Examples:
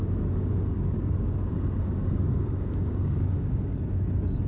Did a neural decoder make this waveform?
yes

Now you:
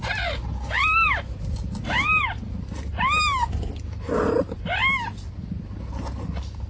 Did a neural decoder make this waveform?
no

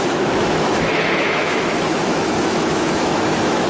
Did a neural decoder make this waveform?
yes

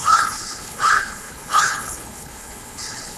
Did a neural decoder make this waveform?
yes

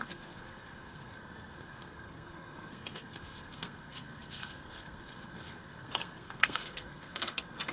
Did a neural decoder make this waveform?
yes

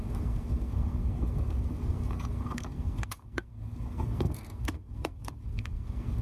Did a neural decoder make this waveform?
yes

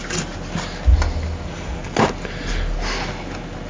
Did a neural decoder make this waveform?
no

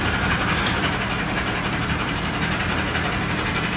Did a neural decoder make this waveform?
no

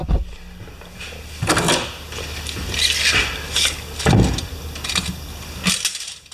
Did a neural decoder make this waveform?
no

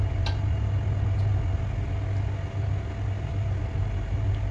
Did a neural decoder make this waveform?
no